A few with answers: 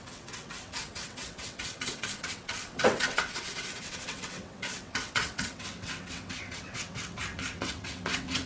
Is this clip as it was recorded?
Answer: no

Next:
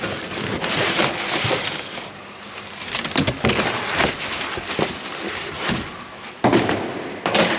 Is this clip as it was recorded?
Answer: yes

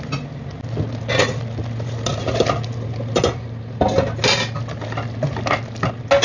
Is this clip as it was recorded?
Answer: yes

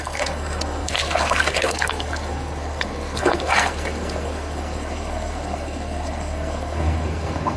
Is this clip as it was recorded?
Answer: no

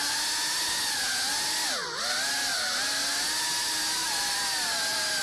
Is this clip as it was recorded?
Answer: yes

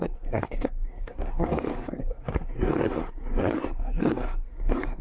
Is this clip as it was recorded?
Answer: no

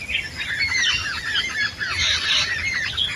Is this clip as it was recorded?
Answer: yes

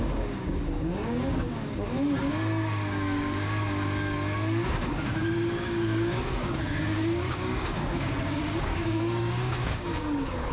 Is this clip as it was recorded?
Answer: no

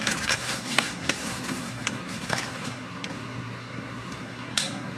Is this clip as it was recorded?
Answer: no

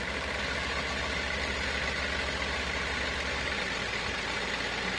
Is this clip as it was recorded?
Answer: yes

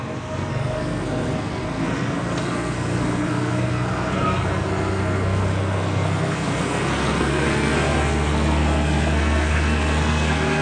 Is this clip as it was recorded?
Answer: no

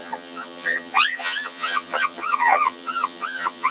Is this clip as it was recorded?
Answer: no